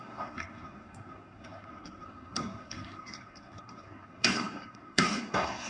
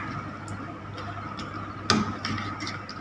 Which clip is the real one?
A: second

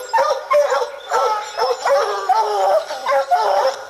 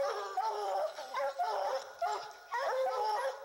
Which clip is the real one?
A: first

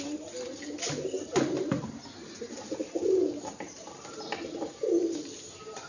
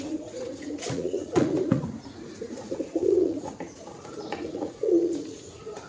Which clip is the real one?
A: first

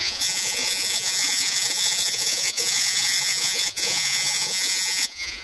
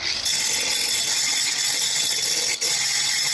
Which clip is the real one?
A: second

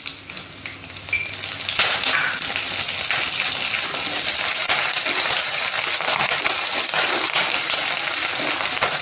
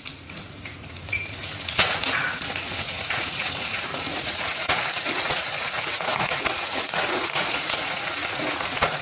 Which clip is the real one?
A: first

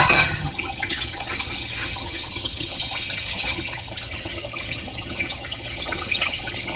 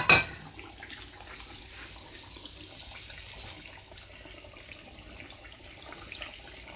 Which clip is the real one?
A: second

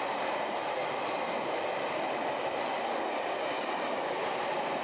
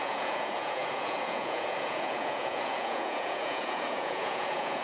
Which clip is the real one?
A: first